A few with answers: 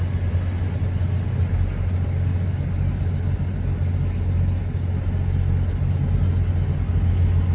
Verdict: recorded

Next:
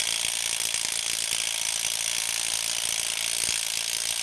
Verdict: recorded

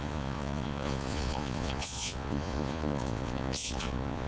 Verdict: remade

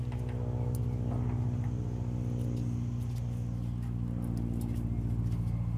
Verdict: recorded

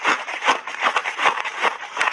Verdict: remade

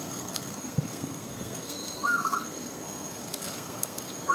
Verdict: remade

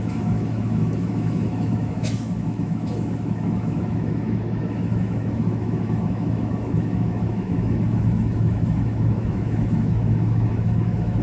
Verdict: remade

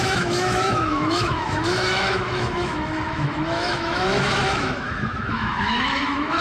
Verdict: remade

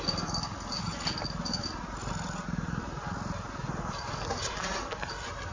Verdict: recorded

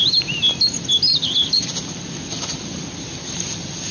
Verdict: recorded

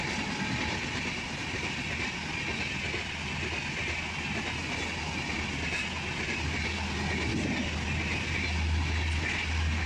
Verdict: recorded